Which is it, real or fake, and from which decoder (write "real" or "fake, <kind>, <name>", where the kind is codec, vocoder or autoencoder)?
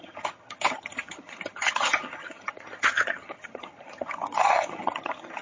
fake, vocoder, HiFi-GAN